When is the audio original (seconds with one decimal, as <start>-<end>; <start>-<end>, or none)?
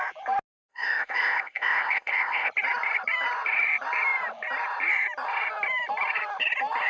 0.0-0.7; 2.5-6.9